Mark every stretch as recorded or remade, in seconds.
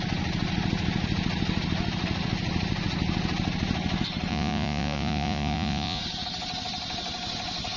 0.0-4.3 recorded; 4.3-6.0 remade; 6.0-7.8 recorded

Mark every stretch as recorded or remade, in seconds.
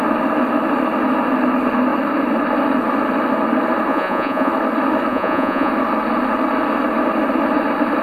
0.0-3.9 recorded; 3.9-4.5 remade; 4.5-5.1 recorded; 5.1-5.7 remade; 5.7-8.0 recorded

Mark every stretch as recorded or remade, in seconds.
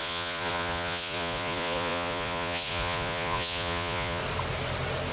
0.0-4.2 remade; 4.2-5.1 recorded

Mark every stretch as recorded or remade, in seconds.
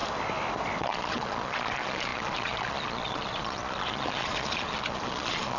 0.0-0.8 recorded; 0.8-5.6 remade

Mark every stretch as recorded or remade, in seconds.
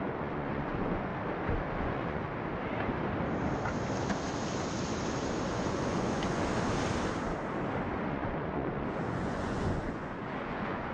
0.0-1.1 remade; 1.1-1.8 recorded; 1.8-2.3 remade; 2.3-5.5 recorded; 5.5-6.4 remade; 6.4-8.1 recorded; 8.1-10.9 remade